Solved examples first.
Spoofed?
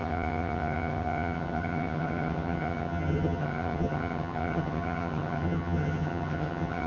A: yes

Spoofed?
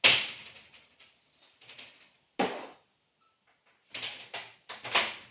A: no